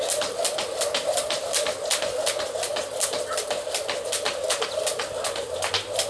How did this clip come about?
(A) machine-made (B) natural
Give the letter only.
B